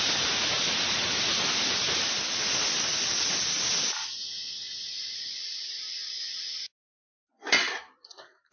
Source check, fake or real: real